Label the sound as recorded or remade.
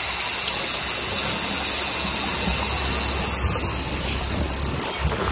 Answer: recorded